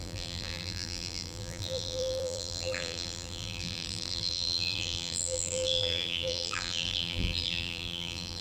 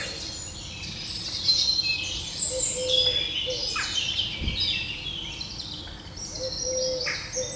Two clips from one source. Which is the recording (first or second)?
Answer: second